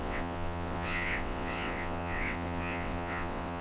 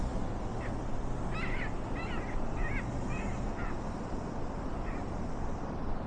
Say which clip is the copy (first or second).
first